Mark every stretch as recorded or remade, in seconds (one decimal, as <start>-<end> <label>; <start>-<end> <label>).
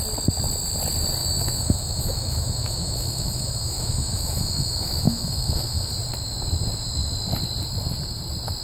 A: 0.0-1.2 recorded; 1.2-5.9 remade; 5.9-8.6 recorded